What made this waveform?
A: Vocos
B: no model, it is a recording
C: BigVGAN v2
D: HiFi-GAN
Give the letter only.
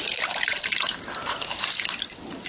B